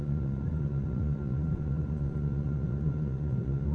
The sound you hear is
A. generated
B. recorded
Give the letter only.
A